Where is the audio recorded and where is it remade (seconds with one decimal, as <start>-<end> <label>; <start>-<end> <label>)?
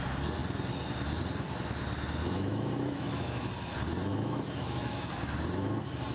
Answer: 0.0-2.2 recorded; 2.2-3.5 remade; 3.5-4.1 recorded; 4.1-5.1 remade; 5.1-6.1 recorded